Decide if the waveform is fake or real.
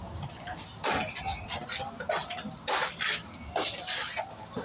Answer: real